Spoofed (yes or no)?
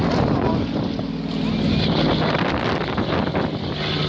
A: no